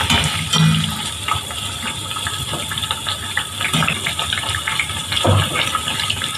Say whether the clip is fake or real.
real